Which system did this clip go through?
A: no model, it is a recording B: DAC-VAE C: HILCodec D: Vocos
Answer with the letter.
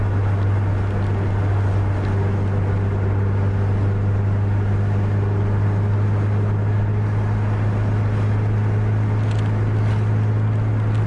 A